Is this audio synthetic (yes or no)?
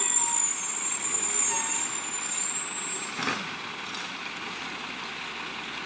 no